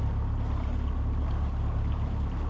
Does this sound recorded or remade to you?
recorded